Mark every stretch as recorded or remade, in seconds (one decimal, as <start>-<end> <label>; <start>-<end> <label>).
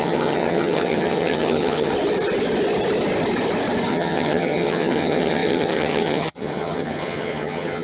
0.0-1.9 remade; 1.9-3.9 recorded; 3.9-7.8 remade